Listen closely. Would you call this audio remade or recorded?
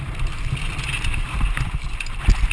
recorded